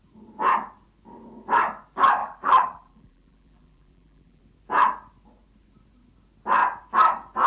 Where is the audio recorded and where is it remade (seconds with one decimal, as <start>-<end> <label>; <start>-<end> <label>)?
0.0-2.2 recorded; 2.2-4.4 remade; 4.4-7.5 recorded